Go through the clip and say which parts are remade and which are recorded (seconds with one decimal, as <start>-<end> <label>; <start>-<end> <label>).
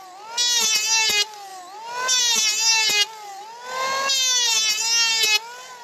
0.0-5.8 recorded